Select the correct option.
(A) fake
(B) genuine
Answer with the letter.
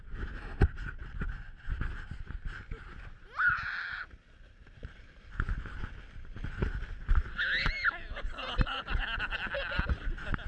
B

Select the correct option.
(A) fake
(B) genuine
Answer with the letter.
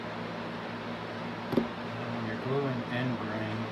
B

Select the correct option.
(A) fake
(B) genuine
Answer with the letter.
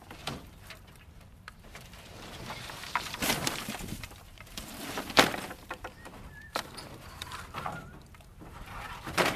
A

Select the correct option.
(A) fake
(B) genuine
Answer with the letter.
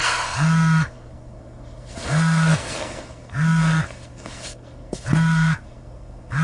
A